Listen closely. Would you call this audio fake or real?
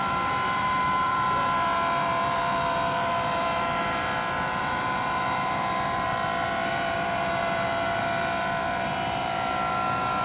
fake